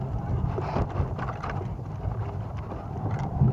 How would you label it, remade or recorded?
recorded